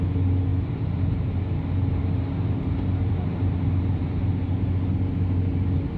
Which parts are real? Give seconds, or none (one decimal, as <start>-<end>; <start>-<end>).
0.0-6.0